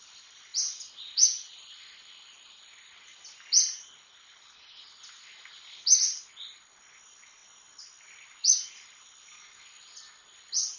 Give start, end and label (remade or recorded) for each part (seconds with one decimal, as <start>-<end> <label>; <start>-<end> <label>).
0.0-10.8 recorded